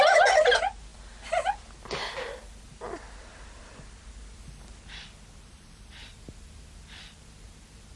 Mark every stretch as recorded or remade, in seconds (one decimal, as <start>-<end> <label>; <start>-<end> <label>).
0.0-8.0 recorded